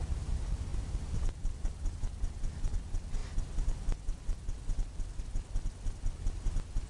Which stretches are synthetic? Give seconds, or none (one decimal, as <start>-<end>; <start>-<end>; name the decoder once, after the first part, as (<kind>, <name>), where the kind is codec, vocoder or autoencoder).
0.7-1.9 (vocoder, BigVGAN v2)